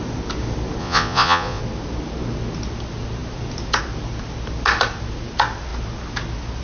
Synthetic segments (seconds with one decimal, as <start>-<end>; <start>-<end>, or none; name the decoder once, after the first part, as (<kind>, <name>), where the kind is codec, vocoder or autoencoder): 0.8-1.6 (vocoder, Vocos)

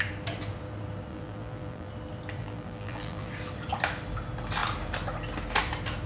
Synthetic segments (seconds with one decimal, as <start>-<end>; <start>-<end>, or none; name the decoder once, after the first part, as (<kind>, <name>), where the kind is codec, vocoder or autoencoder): 1.1-1.9 (vocoder, BigVGAN v2); 2.4-3.3

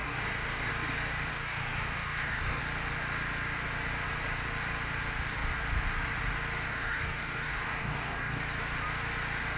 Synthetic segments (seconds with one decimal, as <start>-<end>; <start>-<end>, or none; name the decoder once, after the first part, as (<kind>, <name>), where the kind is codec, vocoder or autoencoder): 0.0-0.7 (codec, DAC); 1.3-2.6; 6.7-8.4

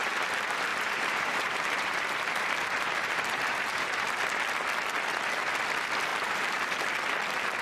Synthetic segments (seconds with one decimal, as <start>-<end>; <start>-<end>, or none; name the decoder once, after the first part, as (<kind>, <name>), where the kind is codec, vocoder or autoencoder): 0.7-4.1 (vocoder, BigVGAN v2); 6.1-6.8

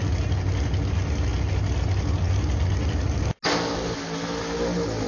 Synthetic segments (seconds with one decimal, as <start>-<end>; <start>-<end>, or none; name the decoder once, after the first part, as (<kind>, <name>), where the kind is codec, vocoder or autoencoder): none